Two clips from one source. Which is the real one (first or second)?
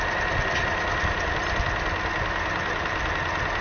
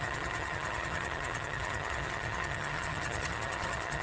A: first